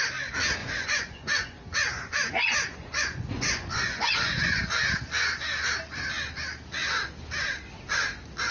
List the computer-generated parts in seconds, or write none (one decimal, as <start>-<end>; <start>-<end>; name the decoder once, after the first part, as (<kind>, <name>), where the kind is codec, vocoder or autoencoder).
0.6-4.6 (vocoder, Vocos)